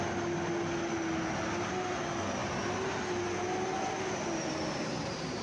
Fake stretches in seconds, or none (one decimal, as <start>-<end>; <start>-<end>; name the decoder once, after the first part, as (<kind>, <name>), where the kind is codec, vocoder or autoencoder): none